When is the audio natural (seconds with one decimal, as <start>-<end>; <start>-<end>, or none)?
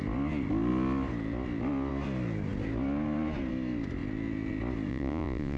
0.0-4.9